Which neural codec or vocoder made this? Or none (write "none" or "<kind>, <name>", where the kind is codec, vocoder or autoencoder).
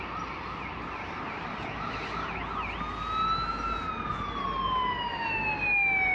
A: none